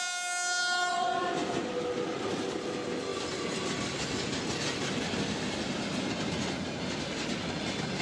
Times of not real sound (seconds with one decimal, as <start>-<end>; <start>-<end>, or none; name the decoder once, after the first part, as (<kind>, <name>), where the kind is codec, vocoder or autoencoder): 0.9-1.7 (vocoder, Vocos)